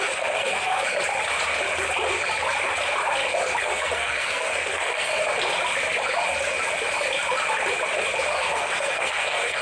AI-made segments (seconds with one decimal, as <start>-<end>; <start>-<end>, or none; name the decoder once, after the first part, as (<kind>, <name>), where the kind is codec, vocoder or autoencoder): 0.0-0.7 (codec, SNAC); 3.6-5.1; 8.4-9.6

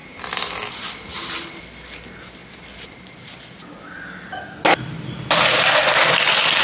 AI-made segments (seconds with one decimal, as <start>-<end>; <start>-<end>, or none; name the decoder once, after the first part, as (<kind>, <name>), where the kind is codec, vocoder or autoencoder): none

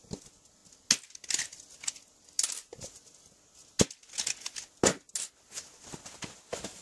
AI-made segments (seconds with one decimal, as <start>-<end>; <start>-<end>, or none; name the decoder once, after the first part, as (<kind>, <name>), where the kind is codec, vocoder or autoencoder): none

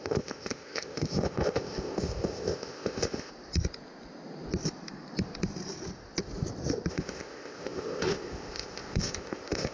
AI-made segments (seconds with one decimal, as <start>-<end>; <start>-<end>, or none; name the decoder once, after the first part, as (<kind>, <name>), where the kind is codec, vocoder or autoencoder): 0.0-3.3 (codec, ZipCodec); 6.9-9.7